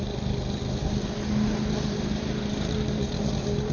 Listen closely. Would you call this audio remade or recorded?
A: recorded